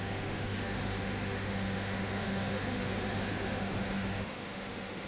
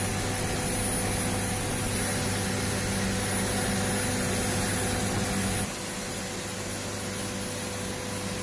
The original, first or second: second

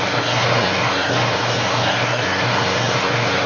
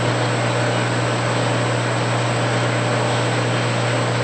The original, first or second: second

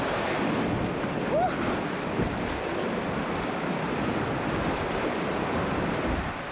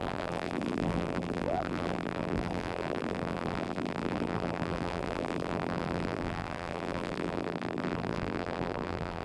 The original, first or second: first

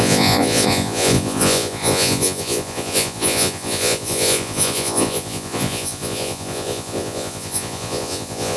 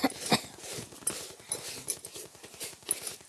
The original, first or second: second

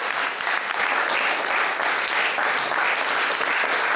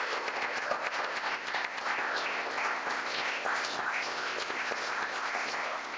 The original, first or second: first